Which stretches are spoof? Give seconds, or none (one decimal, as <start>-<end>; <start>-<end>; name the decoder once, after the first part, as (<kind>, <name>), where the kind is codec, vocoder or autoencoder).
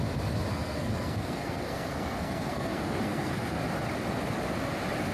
0.5-3.6 (codec, SNAC)